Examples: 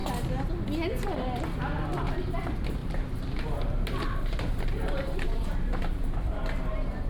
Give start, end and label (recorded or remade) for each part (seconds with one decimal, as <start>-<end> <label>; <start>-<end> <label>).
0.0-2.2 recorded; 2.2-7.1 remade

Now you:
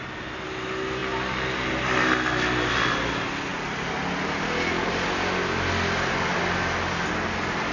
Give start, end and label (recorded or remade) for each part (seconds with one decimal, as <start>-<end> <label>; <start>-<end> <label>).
0.0-7.7 recorded

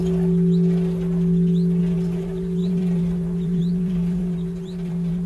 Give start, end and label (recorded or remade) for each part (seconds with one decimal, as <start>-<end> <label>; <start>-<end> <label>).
0.0-1.8 recorded; 1.8-5.3 remade

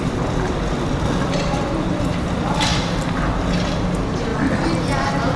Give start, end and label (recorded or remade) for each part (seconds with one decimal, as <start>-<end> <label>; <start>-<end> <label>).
0.0-5.4 recorded

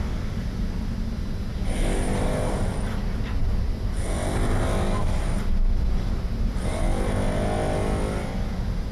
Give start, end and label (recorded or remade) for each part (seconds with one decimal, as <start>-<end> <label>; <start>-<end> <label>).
0.0-8.9 recorded

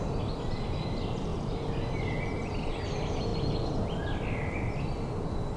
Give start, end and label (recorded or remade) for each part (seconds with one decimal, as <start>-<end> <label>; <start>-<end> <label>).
0.0-5.6 recorded

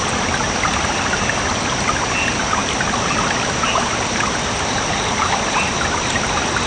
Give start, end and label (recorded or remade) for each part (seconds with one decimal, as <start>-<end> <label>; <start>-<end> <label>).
0.0-6.7 recorded